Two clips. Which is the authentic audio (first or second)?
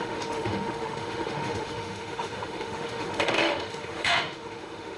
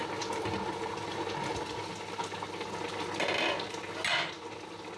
second